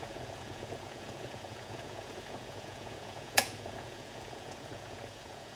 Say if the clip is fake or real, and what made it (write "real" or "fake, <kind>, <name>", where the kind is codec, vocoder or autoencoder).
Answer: fake, vocoder, Vocos